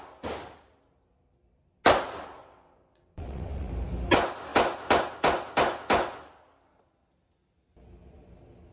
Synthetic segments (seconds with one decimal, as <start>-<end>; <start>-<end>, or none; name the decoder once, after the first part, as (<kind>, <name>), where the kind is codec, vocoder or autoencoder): 2.4-3.7 (vocoder, WaveNeXt)